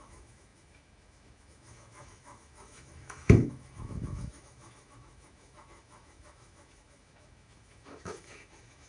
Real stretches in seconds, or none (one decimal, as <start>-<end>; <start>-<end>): none